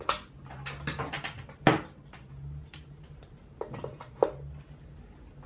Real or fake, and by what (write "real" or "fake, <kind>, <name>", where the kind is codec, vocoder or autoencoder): real